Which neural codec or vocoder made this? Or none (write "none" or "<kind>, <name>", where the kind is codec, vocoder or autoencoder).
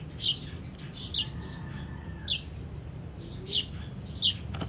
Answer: none